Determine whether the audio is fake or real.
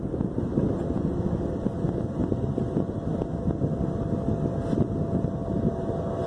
real